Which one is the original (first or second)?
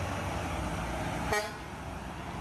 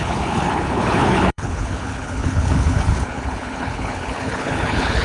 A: first